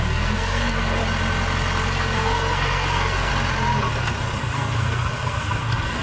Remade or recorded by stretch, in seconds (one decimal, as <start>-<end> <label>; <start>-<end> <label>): 0.0-1.0 remade; 1.0-1.9 recorded; 1.9-3.3 remade; 3.3-4.4 recorded; 4.4-6.0 remade